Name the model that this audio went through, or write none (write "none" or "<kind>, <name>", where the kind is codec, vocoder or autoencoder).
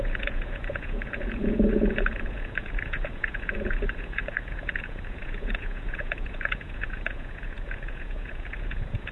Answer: vocoder, Vocos